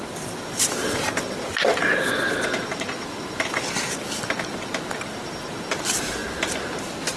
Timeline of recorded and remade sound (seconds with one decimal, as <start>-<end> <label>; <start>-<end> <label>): 0.0-7.2 recorded